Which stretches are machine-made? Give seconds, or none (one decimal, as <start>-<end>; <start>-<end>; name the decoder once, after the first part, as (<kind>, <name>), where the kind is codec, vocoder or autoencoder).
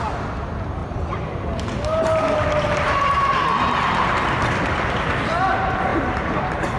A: 0.8-4.9 (vocoder, BigVGAN v2); 5.9-6.8